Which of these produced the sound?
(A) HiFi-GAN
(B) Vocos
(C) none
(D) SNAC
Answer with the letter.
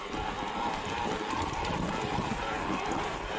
C